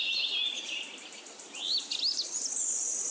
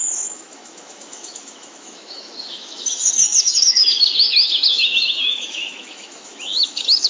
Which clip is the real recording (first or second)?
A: first